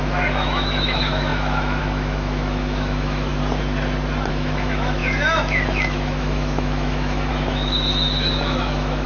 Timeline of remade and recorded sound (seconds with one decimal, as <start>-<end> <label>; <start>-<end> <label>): 0.0-3.3 remade; 3.3-4.3 recorded; 4.3-9.1 remade